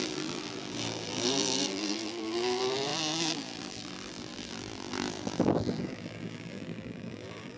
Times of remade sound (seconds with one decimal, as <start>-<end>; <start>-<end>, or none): 0.0-7.6